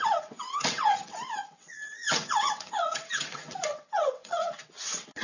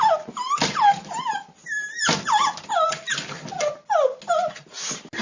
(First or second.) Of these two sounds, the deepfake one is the first